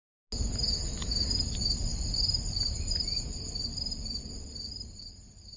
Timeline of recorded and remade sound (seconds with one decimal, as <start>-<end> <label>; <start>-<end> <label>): 0.0-5.6 recorded